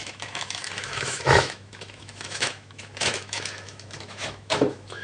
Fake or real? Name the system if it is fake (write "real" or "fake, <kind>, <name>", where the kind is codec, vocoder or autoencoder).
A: fake, autoencoder, DAC-VAE